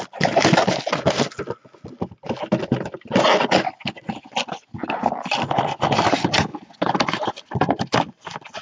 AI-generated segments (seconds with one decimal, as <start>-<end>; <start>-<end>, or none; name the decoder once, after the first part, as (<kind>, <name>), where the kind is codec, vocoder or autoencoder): none